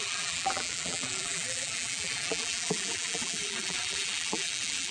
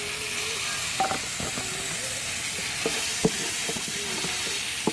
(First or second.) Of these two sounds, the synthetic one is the first